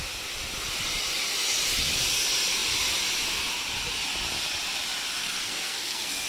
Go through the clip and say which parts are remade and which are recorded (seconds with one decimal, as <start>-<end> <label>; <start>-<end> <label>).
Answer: 0.0-5.2 recorded; 5.2-6.3 remade